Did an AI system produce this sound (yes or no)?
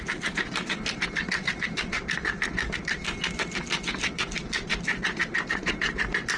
no